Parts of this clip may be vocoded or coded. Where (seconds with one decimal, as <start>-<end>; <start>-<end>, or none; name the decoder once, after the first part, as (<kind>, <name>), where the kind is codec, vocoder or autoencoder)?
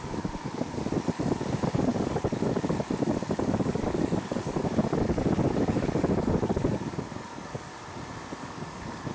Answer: 0.0-7.7 (codec, DAC); 8.4-9.1